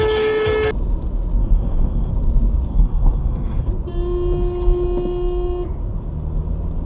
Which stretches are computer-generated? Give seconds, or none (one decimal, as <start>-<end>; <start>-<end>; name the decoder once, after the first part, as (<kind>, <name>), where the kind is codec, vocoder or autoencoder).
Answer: 1.4-2.1 (codec, SNAC); 2.7-3.7